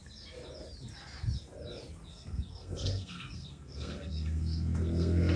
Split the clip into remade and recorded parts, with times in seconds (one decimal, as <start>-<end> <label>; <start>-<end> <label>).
0.0-2.1 recorded; 2.1-5.4 remade

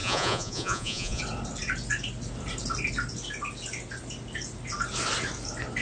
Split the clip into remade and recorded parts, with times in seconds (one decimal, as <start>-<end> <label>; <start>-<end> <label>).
0.0-1.2 remade; 1.2-5.8 recorded